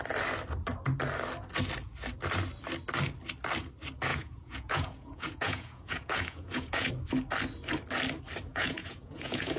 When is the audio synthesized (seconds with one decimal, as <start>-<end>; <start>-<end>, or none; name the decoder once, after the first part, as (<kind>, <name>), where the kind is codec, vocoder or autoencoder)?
4.1-6.9 (vocoder, Vocos); 8.5-9.6